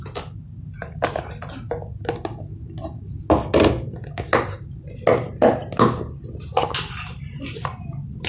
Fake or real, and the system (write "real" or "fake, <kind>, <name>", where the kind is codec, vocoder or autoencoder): real